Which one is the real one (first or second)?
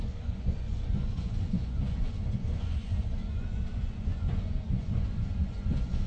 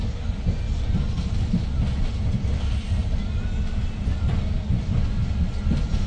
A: second